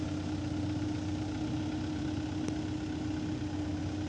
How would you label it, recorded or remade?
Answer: recorded